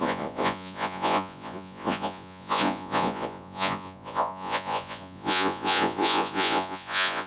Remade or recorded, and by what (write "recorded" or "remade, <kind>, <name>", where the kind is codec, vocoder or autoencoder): remade, vocoder, Vocos